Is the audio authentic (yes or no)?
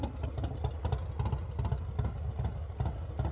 yes